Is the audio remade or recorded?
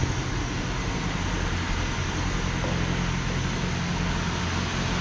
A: recorded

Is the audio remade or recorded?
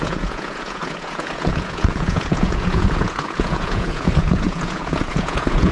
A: remade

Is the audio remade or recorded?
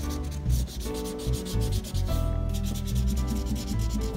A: recorded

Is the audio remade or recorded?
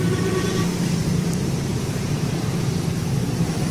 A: remade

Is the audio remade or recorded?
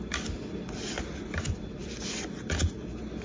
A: recorded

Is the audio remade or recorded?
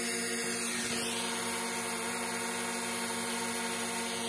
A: recorded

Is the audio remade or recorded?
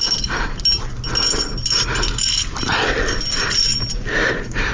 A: recorded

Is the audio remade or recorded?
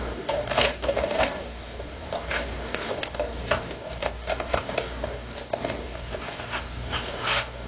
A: remade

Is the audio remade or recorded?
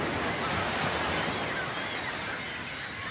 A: recorded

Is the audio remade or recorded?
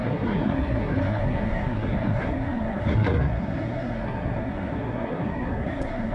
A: remade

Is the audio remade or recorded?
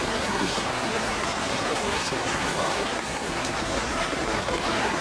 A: remade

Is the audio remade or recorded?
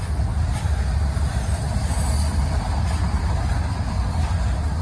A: recorded